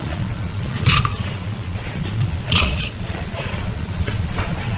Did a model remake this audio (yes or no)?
yes